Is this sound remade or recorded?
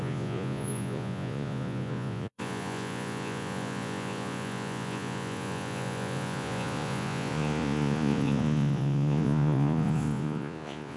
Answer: remade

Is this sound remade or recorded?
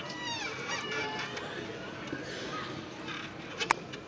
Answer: recorded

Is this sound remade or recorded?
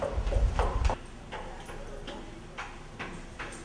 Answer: recorded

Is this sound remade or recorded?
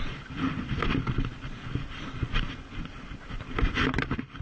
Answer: recorded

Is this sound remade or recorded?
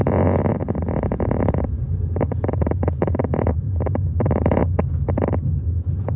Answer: remade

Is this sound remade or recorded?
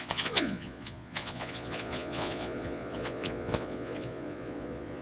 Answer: remade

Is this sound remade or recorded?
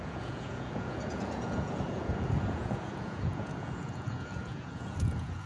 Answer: remade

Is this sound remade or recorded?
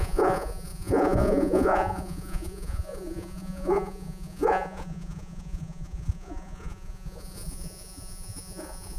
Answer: remade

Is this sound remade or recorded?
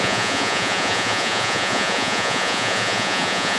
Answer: remade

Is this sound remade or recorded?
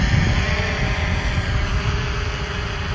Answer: recorded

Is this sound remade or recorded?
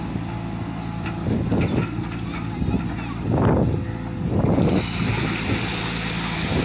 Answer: recorded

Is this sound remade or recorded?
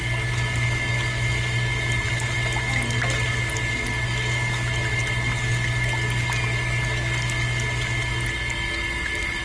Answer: recorded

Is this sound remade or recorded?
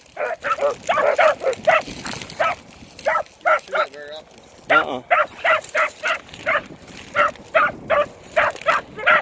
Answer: recorded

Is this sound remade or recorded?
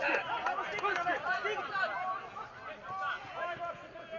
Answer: recorded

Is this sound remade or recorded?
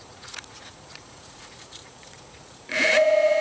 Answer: remade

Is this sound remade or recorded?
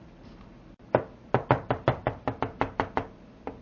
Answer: recorded